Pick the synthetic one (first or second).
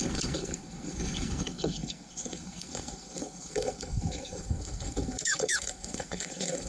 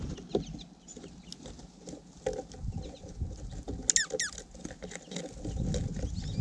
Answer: first